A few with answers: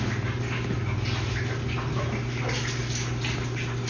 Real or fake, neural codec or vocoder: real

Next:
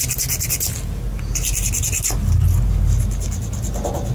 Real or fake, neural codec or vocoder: real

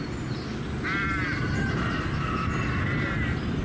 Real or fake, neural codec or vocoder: real